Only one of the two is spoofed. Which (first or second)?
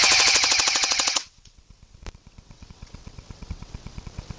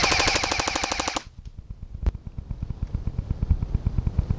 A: first